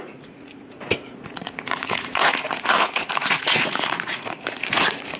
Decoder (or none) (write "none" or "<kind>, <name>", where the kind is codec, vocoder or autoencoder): vocoder, Vocos